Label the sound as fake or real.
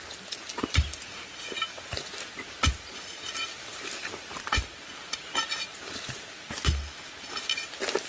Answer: real